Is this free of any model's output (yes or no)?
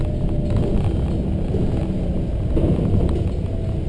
yes